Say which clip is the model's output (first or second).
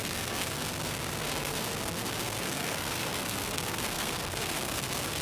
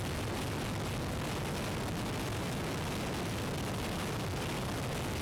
first